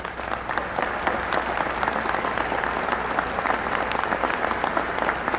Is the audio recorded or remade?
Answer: recorded